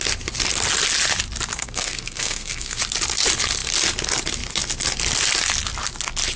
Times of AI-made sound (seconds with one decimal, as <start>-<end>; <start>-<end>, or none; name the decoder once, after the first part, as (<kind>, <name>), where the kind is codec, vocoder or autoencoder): 1.5-2.8 (codec, SNAC)